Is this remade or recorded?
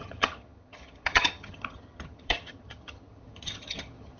remade